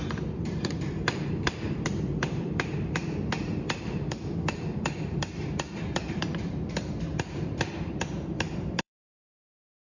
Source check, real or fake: fake